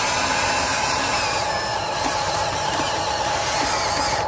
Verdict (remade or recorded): remade